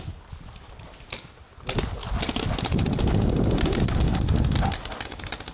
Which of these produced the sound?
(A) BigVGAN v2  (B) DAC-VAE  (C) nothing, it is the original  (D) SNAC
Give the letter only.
C